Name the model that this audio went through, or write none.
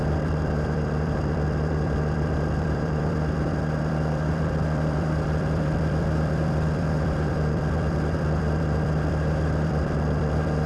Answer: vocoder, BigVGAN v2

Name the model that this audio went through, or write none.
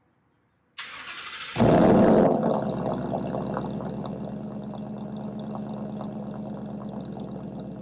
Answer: none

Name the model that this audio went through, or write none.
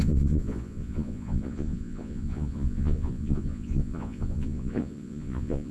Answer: vocoder, Vocos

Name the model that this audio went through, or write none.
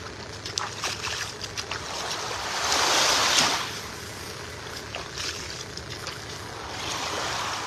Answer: none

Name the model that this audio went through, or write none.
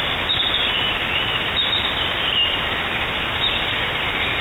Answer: none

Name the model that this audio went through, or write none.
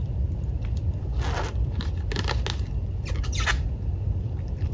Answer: none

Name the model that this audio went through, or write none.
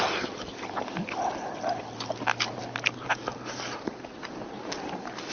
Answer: vocoder, BigVGAN v2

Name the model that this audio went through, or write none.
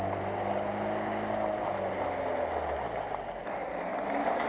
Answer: none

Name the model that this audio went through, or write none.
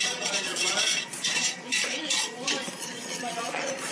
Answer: vocoder, Vocos